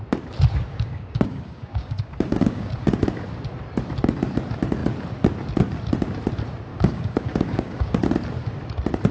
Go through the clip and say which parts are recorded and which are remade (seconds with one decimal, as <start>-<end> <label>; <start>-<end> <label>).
0.0-0.7 recorded; 0.7-2.7 remade; 2.7-6.7 recorded; 6.7-8.0 remade; 8.0-9.1 recorded